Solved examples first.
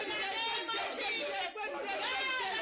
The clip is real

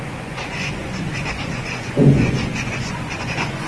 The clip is fake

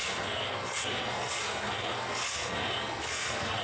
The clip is fake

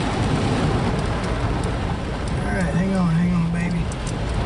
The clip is real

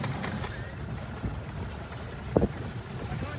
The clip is real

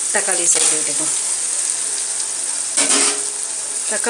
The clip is real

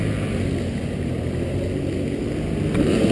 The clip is real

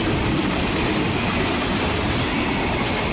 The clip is real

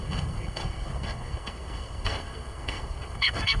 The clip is fake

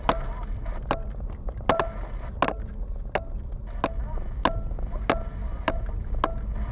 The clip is real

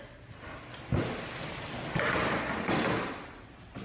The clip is real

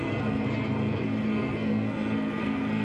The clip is fake